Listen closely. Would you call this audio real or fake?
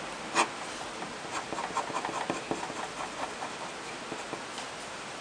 real